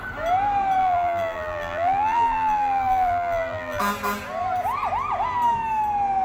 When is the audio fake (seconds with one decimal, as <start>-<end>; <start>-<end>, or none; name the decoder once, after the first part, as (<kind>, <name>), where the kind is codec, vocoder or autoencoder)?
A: 0.8-3.8 (vocoder, BigVGAN v2)